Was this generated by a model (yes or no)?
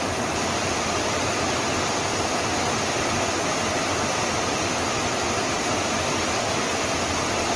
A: no